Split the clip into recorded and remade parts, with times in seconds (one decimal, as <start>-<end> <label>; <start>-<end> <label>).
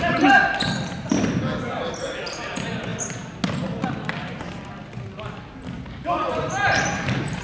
0.0-7.4 recorded